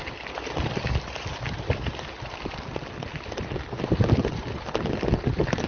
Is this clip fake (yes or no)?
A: no